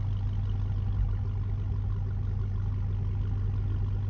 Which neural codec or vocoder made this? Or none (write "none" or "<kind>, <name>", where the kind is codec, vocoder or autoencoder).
none